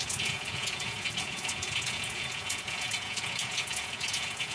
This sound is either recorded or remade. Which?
remade